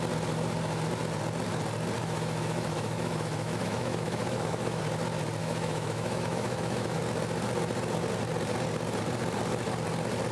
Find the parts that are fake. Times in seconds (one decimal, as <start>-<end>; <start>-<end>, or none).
2.0-4.8; 5.4-7.0